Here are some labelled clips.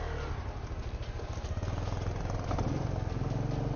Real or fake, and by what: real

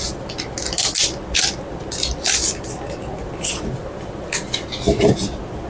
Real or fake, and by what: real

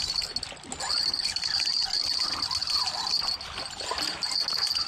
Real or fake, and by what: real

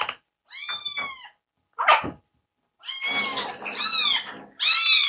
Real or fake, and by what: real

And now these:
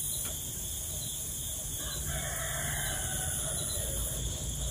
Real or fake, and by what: real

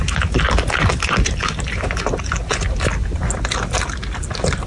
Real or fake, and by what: real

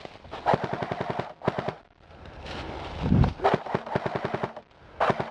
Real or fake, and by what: real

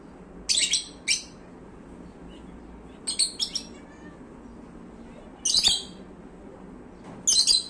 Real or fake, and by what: real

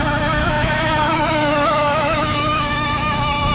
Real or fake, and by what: fake, autoencoder, DAC-VAE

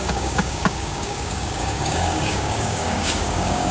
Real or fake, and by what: fake, codec, DAC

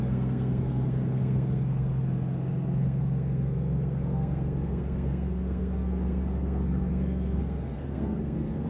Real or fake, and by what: fake, codec, SNAC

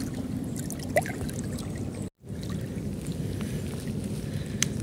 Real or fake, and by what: real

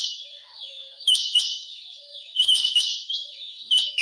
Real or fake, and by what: fake, autoencoder, DAC-VAE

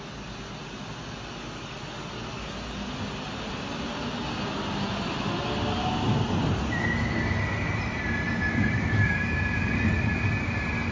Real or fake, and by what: real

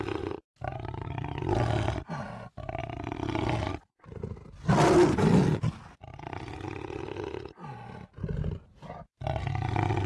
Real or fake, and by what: real